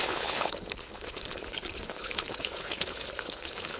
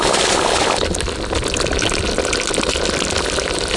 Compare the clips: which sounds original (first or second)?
second